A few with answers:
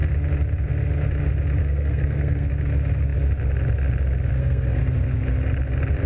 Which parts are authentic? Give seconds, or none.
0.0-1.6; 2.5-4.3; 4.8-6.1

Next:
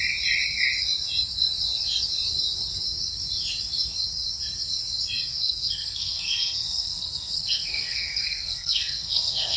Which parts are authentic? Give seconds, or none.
0.0-5.3